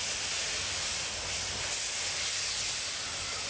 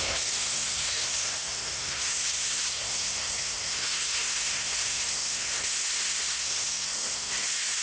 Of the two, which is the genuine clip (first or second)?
first